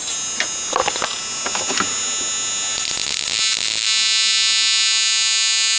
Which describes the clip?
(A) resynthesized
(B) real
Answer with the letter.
B